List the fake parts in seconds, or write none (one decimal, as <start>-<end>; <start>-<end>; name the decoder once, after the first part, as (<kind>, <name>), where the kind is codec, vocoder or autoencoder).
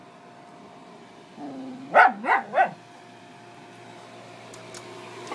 0.0-3.2 (vocoder, BigVGAN v2)